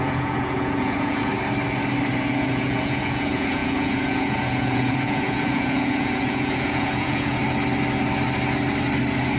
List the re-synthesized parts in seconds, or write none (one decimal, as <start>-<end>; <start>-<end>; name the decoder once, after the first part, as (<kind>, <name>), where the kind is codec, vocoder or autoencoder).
0.0-1.3 (vocoder, Vocos); 2.2-7.4